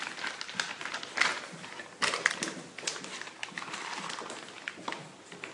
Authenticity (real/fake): real